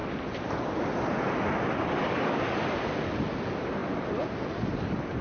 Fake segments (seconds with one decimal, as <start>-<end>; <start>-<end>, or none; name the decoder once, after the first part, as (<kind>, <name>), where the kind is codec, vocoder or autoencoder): 2.0-2.6 (codec, DAC)